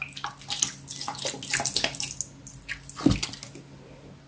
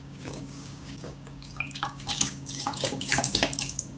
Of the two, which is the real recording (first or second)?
first